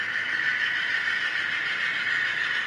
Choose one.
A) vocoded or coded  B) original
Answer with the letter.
B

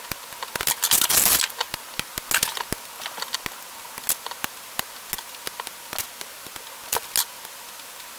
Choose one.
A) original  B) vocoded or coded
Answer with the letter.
A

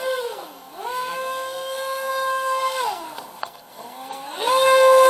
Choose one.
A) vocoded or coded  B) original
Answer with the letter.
A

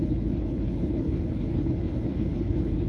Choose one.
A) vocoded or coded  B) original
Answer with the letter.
A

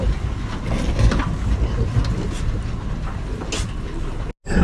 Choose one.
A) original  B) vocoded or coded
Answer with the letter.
A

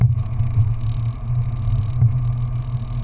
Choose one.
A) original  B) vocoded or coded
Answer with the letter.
A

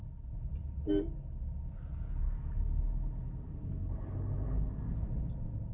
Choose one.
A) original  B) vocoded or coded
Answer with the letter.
A